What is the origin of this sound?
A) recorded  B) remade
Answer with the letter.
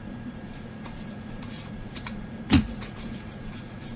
B